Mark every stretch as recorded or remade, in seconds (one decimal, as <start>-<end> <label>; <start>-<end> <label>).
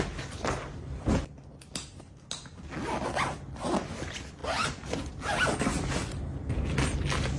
0.0-7.4 recorded